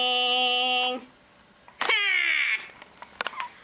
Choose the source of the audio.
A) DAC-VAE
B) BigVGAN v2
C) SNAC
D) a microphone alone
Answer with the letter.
D